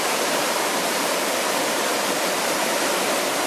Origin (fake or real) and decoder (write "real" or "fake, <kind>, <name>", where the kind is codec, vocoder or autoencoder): fake, vocoder, BigVGAN v2